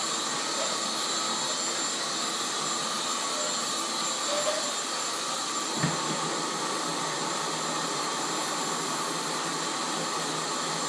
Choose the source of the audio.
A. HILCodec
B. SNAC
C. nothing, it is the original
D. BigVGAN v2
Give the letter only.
C